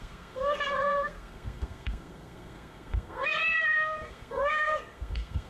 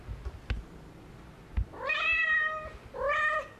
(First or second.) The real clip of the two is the second